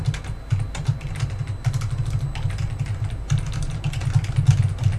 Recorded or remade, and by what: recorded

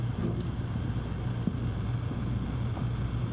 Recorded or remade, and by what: recorded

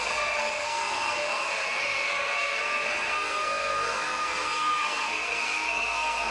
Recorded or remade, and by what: remade, codec, SNAC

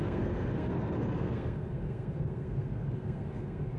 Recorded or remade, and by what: remade, codec, SNAC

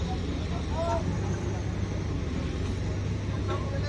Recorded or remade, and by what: recorded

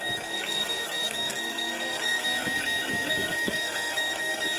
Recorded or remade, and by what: remade, codec, SNAC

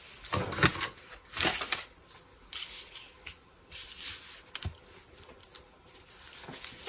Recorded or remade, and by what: recorded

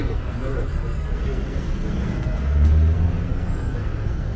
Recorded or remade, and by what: remade, codec, SNAC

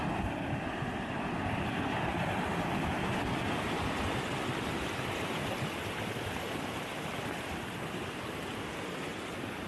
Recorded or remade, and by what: recorded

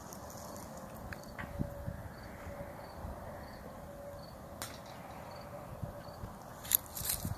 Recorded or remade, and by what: recorded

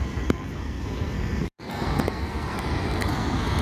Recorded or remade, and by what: remade, codec, SNAC